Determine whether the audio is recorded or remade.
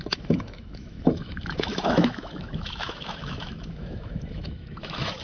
remade